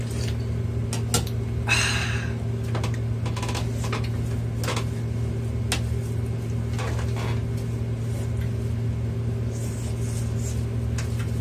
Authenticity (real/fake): real